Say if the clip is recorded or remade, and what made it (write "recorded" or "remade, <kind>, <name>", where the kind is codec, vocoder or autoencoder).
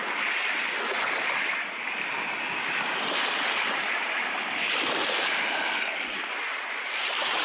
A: recorded